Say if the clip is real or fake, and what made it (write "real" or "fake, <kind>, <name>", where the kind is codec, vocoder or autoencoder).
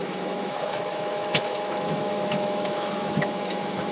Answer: fake, autoencoder, DAC-VAE